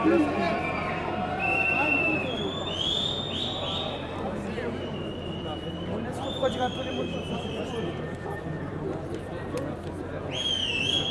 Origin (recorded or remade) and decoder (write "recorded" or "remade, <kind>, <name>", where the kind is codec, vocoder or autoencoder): remade, vocoder, BigVGAN v2